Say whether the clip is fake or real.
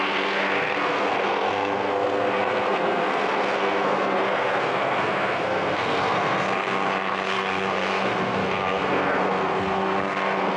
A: fake